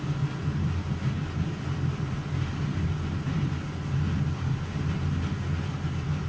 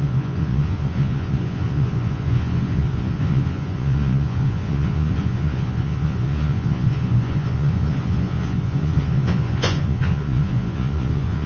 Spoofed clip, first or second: second